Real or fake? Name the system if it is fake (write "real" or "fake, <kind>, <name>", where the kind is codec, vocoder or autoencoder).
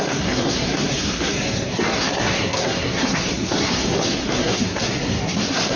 fake, codec, SNAC